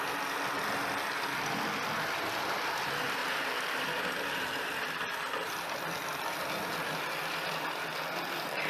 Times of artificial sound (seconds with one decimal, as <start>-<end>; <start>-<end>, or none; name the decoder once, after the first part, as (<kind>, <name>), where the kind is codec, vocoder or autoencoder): none